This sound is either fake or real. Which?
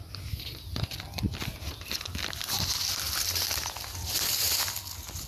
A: real